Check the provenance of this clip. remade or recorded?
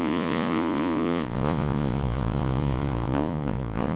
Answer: remade